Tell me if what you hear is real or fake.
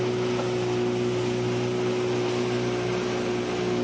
real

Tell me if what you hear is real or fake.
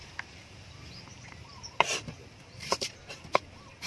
fake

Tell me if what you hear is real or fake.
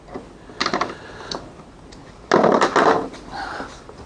real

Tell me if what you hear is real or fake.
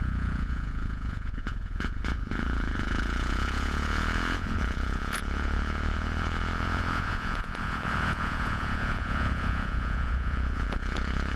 fake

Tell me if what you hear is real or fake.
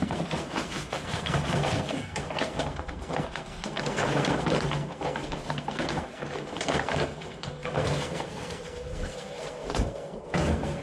fake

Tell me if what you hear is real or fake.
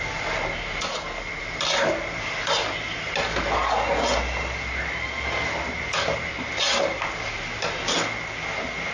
real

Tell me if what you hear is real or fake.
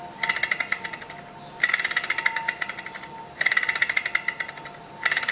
real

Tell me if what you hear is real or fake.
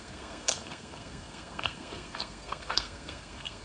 fake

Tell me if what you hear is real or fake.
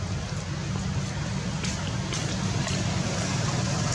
real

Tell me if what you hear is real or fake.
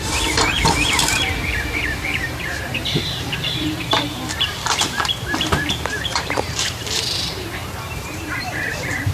fake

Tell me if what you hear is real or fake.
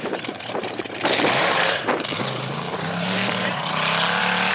fake